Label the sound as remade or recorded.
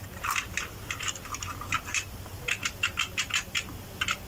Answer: recorded